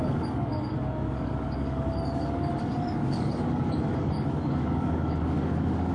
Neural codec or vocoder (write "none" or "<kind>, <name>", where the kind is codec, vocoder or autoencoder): codec, DAC